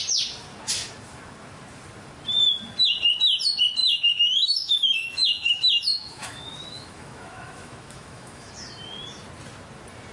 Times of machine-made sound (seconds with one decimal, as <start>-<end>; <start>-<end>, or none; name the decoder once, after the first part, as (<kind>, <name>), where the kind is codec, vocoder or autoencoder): 3.8-8.5 (autoencoder, DAC-VAE)